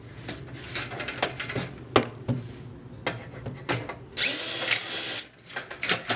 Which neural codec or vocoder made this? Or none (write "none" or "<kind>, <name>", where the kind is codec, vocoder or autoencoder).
none